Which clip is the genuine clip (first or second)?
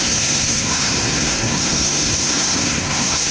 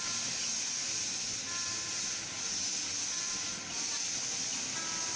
second